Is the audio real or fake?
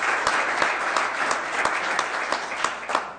real